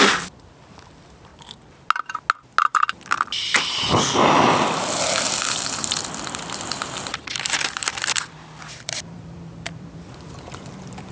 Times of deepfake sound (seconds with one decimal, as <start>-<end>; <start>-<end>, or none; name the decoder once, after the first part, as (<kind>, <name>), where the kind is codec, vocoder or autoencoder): 0.0-1.3 (vocoder, BigVGAN v2); 2.7-11.1